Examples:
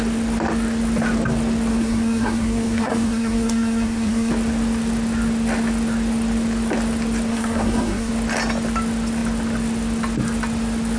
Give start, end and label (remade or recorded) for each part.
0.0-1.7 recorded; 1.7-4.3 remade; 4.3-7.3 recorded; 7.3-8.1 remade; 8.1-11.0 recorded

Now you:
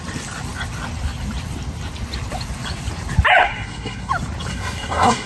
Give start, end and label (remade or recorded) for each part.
0.0-3.4 recorded; 3.4-4.1 remade; 4.1-4.5 recorded; 4.5-5.3 remade